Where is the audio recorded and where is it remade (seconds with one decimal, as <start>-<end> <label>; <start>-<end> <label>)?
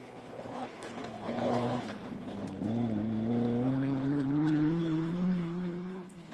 0.0-2.4 remade; 2.4-3.7 recorded; 3.7-6.3 remade